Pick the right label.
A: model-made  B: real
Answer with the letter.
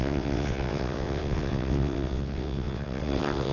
A